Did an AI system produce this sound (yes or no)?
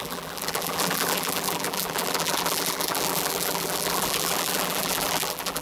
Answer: yes